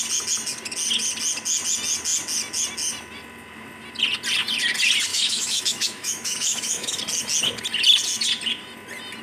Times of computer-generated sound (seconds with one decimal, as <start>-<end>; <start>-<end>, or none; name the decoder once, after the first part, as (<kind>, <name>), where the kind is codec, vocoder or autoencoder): 5.1-7.0 (autoencoder, DAC-VAE)